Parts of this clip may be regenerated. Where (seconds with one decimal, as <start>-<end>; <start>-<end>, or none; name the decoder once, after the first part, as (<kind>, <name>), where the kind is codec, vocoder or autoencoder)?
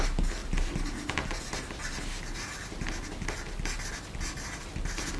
none